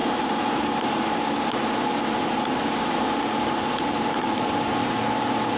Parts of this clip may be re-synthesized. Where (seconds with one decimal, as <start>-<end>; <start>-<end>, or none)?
none